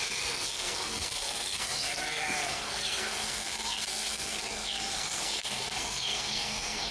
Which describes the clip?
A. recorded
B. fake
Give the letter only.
B